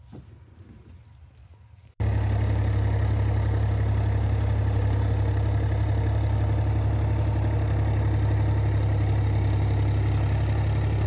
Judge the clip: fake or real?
real